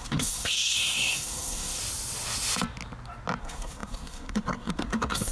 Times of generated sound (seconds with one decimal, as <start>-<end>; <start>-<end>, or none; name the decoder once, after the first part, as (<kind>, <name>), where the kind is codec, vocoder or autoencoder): 0.0-1.8 (codec, SNAC); 3.4-5.3